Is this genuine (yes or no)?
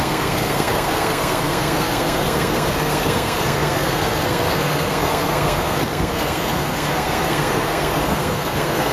no